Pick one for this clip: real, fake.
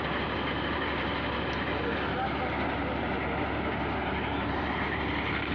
real